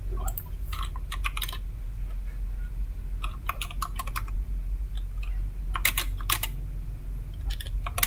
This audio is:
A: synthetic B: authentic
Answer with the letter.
B